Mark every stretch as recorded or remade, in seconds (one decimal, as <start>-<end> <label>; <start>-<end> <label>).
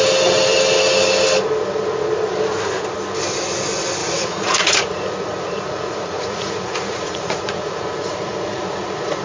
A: 0.0-4.0 recorded; 4.0-9.2 remade